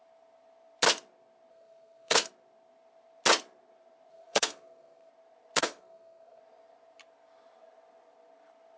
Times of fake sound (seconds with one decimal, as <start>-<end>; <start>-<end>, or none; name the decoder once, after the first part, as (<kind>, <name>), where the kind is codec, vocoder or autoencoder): 1.5-2.3 (codec, SNAC); 4.1-5.1; 5.6-6.4